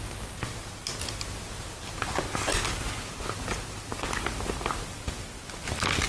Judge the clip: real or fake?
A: real